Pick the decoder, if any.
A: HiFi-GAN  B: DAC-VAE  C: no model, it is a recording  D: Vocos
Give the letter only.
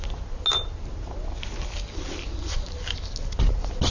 C